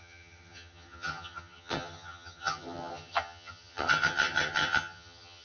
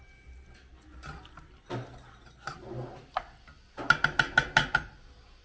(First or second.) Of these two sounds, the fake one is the first